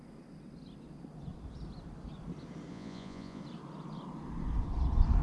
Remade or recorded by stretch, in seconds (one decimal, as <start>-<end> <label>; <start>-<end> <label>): 0.0-2.7 recorded; 2.7-3.4 remade; 3.4-5.2 recorded